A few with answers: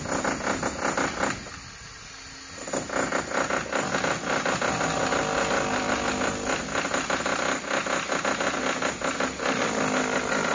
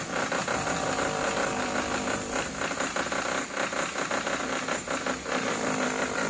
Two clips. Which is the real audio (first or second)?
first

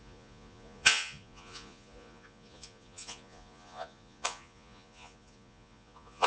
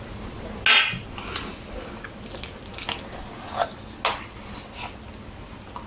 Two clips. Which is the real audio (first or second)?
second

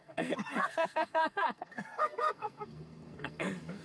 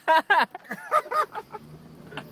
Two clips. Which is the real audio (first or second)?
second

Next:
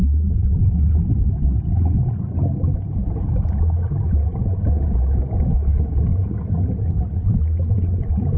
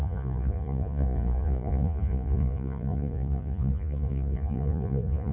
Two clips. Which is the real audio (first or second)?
first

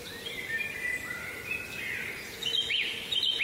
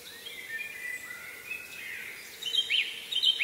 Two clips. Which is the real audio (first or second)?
second